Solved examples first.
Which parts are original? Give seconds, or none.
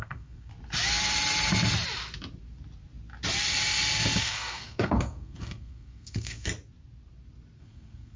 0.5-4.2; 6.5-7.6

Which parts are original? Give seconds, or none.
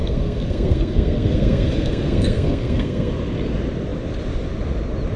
3.1-5.2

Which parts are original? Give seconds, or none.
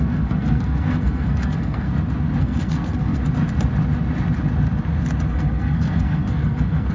1.9-2.4; 3.2-5.3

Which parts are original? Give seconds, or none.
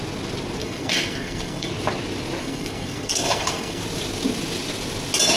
0.0-0.6; 1.7-2.4; 3.8-5.4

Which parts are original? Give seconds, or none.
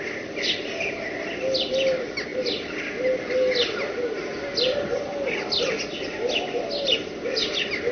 0.0-7.9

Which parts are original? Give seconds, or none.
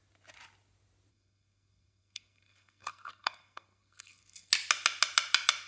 0.0-1.1; 4.5-5.7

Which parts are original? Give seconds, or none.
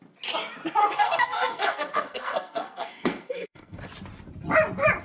0.0-0.8; 3.8-5.0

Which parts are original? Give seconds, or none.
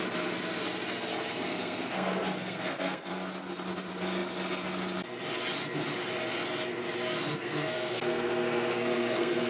0.0-1.5; 3.1-7.3